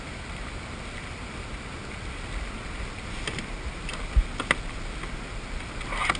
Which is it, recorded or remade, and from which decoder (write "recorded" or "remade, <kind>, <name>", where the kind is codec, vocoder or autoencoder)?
recorded